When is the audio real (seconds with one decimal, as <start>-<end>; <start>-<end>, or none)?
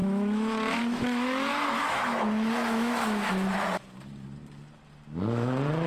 3.5-5.9